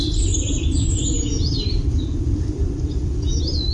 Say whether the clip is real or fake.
fake